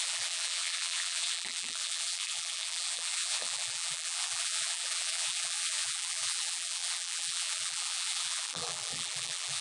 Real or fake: fake